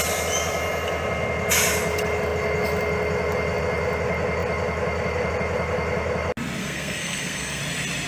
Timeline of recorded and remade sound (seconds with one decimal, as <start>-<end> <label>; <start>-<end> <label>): 0.0-6.6 recorded; 6.6-7.6 remade; 7.6-8.1 recorded

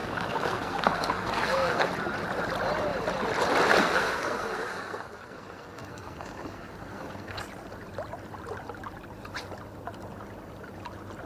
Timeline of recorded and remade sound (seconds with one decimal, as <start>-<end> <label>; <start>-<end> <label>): 0.0-1.9 remade; 1.9-3.8 recorded; 3.8-7.4 remade; 7.4-11.3 recorded

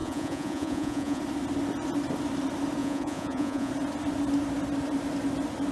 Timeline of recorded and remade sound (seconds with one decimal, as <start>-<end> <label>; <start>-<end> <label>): 0.0-1.2 remade; 1.2-2.8 recorded; 2.8-3.7 remade; 3.7-5.7 recorded

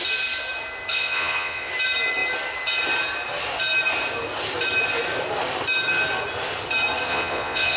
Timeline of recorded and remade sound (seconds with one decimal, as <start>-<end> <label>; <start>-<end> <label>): 0.0-0.9 recorded; 0.9-1.7 remade; 1.7-7.1 recorded; 7.1-7.8 remade